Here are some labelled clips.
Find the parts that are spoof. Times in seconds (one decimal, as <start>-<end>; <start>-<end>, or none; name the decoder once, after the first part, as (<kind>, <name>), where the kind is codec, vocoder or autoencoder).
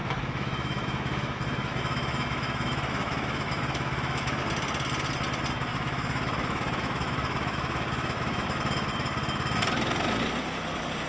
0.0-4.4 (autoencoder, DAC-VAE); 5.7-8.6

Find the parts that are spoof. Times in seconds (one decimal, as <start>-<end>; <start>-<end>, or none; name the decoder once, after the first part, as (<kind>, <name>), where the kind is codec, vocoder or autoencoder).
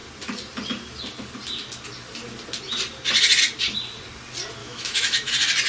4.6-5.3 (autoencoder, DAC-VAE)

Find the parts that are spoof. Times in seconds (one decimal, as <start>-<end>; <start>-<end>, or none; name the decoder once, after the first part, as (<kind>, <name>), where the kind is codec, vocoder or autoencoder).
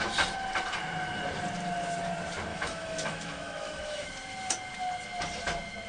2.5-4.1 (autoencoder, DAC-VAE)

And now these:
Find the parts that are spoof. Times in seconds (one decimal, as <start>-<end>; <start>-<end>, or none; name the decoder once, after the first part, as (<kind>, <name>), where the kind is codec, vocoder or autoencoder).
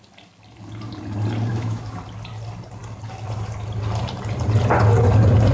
1.5-2.0 (autoencoder, DAC-VAE)